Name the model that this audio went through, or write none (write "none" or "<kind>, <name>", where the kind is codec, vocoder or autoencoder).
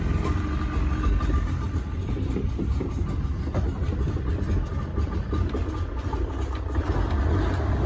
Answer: none